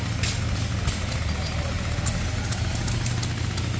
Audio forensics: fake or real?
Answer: real